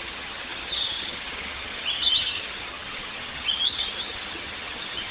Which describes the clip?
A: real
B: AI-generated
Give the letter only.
B